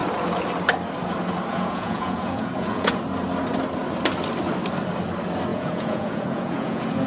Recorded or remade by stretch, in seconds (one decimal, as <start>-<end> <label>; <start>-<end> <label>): 0.0-1.5 recorded; 1.5-3.0 remade; 3.0-5.5 recorded; 5.5-7.1 remade